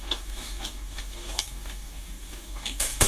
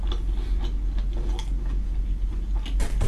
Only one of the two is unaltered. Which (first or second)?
second